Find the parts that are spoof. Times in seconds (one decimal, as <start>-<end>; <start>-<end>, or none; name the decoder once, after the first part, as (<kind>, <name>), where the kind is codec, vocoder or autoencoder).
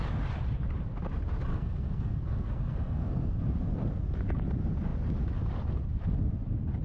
1.5-3.4 (codec, SNAC)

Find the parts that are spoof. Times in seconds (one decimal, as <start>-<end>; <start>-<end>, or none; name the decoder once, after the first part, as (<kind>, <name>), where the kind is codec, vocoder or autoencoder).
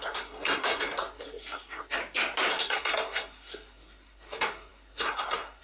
0.0-2.0 (codec, SNAC); 2.5-5.6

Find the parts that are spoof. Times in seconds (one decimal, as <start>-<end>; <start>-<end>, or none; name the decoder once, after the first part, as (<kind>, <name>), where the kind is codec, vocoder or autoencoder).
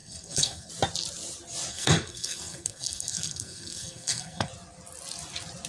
0.0-0.7 (codec, SNAC); 1.7-4.5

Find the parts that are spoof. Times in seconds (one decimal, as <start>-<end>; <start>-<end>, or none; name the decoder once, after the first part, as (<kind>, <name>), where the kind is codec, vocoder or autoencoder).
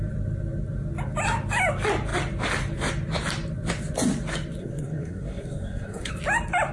4.6-6.1 (codec, SNAC)